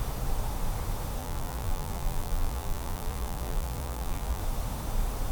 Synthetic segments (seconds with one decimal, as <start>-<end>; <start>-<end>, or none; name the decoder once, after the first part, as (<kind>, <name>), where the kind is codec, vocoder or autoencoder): 1.2-4.4 (vocoder, BigVGAN v2)